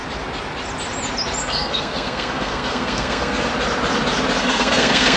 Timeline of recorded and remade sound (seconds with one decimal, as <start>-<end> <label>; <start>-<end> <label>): 0.0-1.4 recorded; 1.4-3.5 remade; 3.5-4.4 recorded; 4.4-5.2 remade